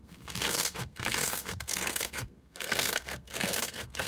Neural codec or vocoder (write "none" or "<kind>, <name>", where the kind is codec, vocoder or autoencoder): codec, SNAC